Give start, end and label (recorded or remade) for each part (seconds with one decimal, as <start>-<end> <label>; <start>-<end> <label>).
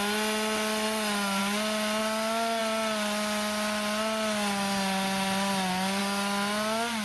0.0-7.0 recorded